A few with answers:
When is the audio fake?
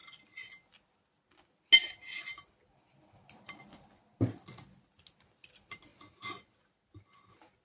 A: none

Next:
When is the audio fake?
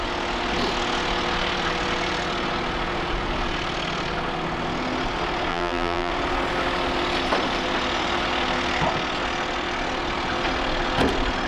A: 5.5-6.1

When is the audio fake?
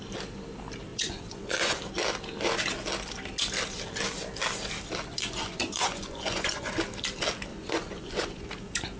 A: 0.9-1.8; 5.1-6.7; 7.5-8.5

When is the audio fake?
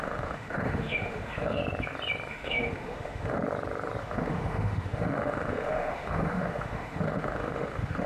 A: 0.0-1.6; 2.3-3.4; 4.0-8.1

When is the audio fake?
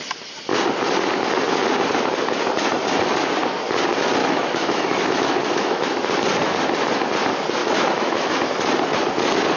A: 4.2-6.0; 7.6-8.3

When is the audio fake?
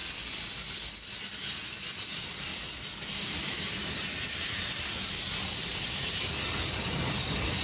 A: 2.1-2.5; 3.1-7.6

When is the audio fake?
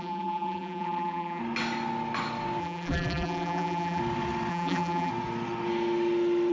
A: 0.0-1.4; 2.6-4.0; 4.5-5.1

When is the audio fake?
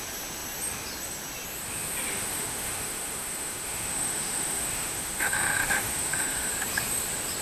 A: 2.1-6.5